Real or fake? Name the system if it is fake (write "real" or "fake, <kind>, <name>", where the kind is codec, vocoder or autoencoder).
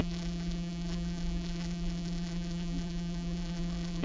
fake, vocoder, BigVGAN v2